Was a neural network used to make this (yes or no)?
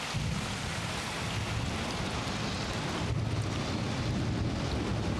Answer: no